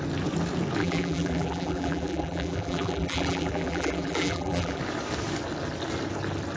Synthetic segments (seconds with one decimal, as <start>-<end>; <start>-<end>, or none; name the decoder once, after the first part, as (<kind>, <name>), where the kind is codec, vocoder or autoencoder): 0.8-4.8 (vocoder, BigVGAN v2)